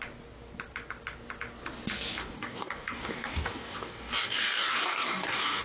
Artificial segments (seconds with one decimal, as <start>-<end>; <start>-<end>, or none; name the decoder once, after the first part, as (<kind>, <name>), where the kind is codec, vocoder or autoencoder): 2.2-5.6 (codec, DAC)